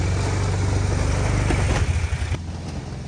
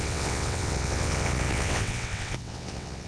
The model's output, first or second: second